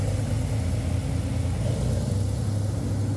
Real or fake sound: real